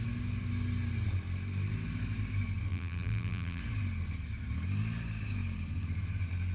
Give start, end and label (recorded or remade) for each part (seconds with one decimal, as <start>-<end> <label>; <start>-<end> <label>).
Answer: 0.0-2.7 recorded; 2.7-3.6 remade; 3.6-6.5 recorded